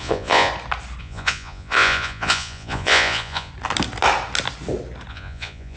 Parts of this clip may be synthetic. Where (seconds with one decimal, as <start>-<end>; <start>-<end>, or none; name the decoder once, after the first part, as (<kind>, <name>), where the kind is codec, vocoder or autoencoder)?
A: 0.0-0.5 (vocoder, Vocos); 1.0-3.5; 5.1-5.8

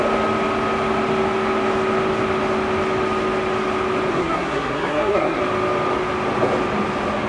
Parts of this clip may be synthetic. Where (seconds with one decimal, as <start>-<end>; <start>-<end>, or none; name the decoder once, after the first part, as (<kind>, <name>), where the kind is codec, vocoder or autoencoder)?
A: 4.1-5.4 (codec, SNAC)

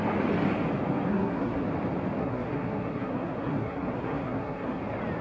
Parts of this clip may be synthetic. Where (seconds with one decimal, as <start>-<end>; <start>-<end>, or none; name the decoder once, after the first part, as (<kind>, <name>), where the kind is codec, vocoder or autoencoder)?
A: 1.1-1.7 (codec, SNAC); 2.2-4.8

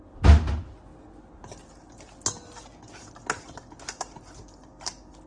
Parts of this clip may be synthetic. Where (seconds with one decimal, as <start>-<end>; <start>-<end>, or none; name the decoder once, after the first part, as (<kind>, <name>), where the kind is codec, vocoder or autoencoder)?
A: none